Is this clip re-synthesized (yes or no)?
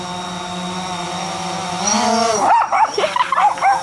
no